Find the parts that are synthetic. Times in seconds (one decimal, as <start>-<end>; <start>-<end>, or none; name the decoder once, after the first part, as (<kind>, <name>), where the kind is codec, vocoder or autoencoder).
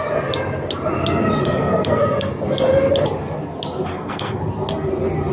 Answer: 1.4-2.3 (codec, SNAC); 3.9-4.4